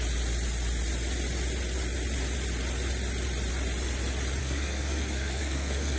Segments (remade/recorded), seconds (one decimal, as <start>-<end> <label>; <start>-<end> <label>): 0.0-4.4 recorded; 4.4-6.0 remade